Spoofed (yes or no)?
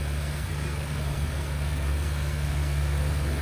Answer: yes